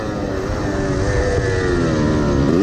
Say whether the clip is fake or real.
real